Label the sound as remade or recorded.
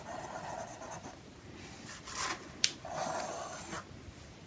recorded